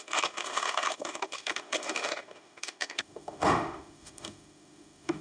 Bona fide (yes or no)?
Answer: no